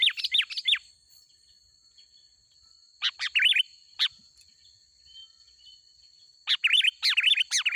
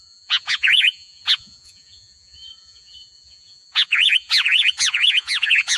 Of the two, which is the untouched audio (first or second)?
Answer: first